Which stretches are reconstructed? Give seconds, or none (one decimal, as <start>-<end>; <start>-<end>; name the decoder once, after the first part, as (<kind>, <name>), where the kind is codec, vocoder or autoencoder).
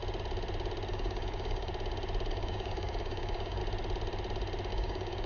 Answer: 0.9-1.7 (codec, DAC); 2.3-3.6; 4.7-5.3